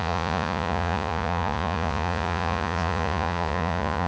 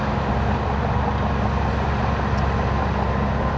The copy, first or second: first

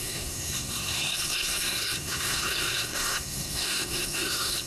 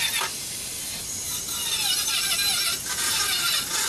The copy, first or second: first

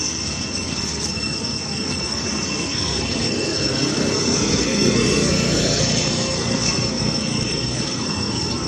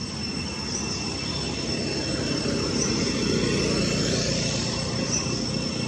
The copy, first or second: first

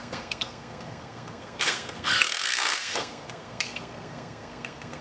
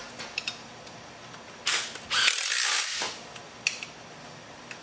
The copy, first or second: first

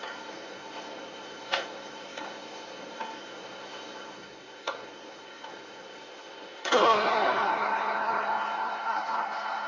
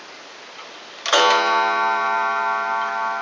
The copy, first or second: first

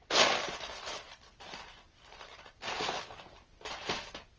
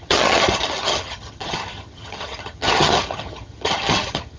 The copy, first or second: second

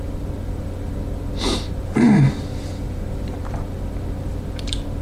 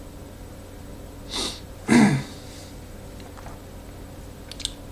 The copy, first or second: first